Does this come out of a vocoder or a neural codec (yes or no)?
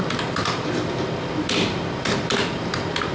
no